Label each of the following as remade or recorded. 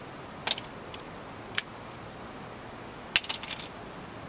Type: recorded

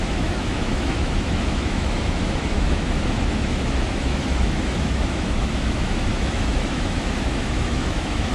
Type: remade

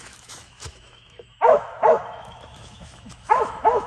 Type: remade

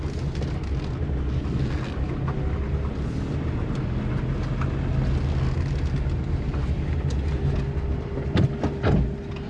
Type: recorded